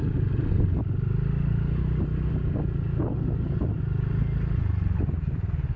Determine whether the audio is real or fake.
real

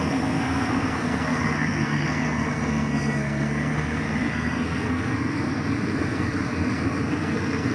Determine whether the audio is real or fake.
fake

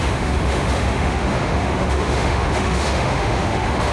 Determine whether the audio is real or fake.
fake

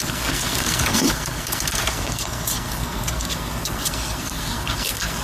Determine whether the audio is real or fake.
fake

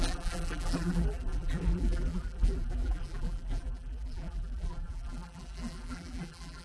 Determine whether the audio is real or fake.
fake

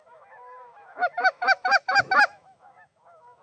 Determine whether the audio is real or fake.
fake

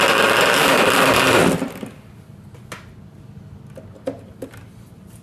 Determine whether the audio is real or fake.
real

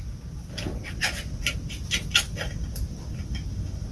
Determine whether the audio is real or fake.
real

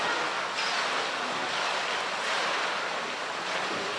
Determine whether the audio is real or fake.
real